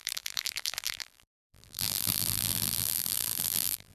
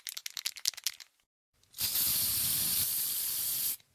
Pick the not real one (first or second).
first